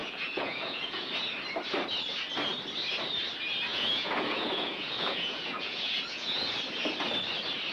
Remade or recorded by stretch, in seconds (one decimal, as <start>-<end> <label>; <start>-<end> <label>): 0.0-1.1 remade; 1.1-3.7 recorded; 3.7-6.5 remade; 6.5-7.7 recorded